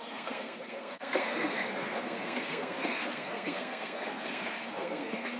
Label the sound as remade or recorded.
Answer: remade